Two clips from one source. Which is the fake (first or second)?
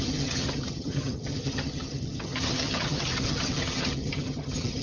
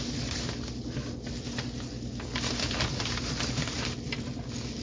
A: first